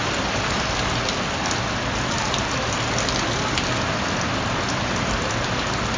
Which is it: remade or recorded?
recorded